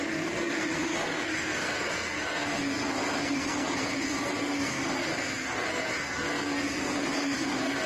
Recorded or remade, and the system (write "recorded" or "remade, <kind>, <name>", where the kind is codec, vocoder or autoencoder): remade, codec, SNAC